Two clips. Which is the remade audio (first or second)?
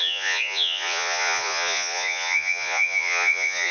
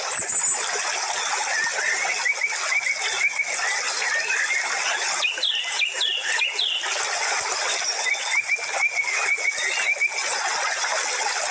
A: first